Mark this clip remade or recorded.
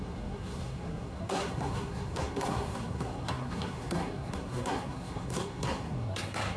remade